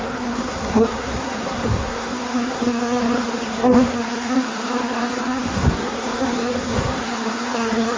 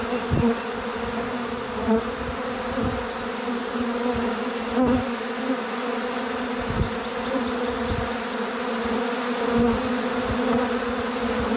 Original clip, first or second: second